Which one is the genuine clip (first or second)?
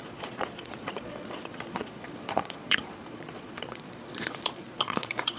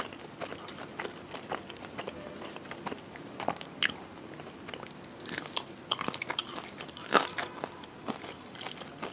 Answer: second